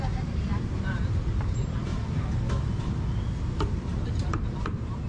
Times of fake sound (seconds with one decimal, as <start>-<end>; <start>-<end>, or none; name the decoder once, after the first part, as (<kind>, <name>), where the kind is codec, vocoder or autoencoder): 0.0-1.9 (vocoder, BigVGAN v2); 3.3-5.1